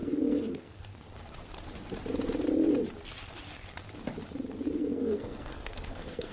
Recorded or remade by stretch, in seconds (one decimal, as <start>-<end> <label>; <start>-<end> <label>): 0.0-0.9 remade; 0.9-4.7 recorded; 4.7-6.3 remade